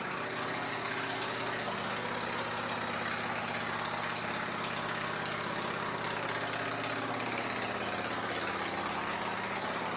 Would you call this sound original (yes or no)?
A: yes